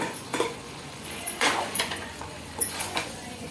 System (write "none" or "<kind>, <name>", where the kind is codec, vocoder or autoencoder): vocoder, Vocos